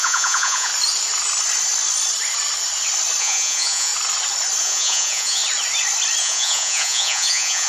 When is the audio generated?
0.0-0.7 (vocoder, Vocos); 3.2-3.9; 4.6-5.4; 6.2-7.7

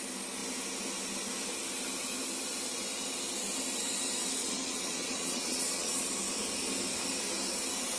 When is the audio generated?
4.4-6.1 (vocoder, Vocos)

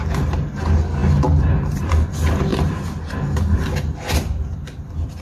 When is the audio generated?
none

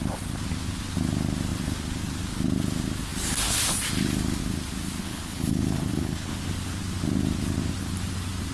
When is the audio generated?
5.0-6.4 (codec, HILCodec)

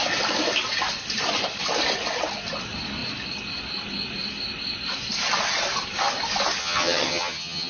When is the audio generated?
6.6-7.7 (vocoder, HiFi-GAN)